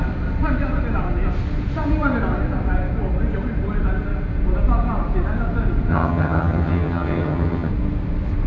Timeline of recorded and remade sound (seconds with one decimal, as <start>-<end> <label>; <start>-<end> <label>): 0.0-5.9 recorded; 5.9-7.7 remade; 7.7-8.5 recorded

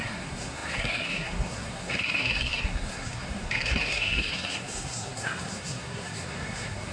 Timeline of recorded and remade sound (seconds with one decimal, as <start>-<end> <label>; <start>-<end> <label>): 0.0-6.9 remade

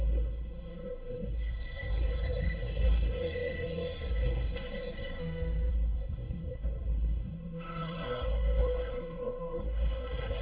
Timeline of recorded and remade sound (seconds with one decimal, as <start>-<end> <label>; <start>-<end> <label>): 0.0-5.2 remade; 5.2-5.7 recorded; 5.7-10.4 remade

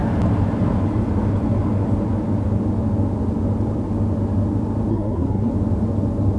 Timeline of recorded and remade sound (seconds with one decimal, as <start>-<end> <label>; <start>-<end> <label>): 0.0-4.9 recorded; 4.9-5.5 remade; 5.5-6.4 recorded

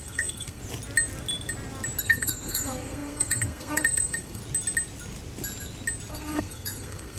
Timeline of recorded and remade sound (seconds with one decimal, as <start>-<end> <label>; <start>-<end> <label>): 0.0-0.6 remade; 0.6-2.0 recorded; 2.0-4.4 remade; 4.4-6.1 recorded; 6.1-7.2 remade

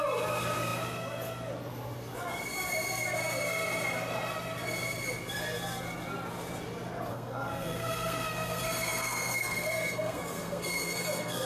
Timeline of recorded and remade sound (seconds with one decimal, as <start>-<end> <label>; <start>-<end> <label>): 0.0-7.1 recorded; 7.1-11.5 remade

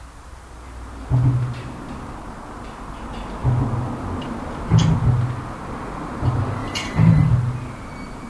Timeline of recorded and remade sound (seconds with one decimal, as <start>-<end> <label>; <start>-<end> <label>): 0.0-6.6 recorded; 6.6-7.3 remade; 7.3-8.3 recorded